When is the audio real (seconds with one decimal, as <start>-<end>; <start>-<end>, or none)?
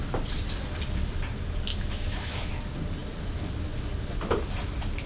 0.0-1.7; 2.5-5.1